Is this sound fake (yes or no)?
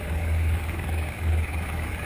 yes